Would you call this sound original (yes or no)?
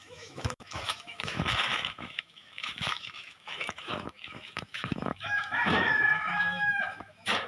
no